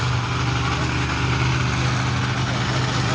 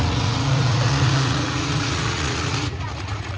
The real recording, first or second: first